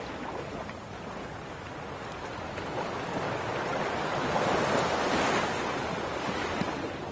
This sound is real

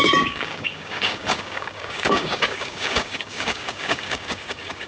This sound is fake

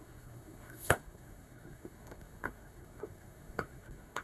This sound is fake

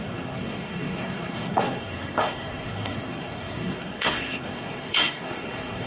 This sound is fake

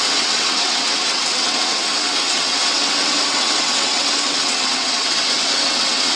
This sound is fake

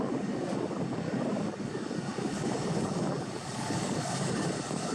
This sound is fake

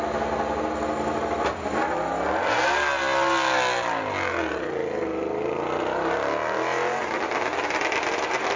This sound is real